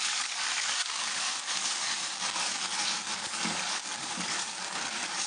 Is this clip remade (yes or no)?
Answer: yes